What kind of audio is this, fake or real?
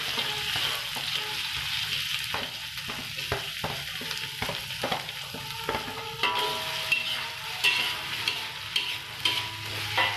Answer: real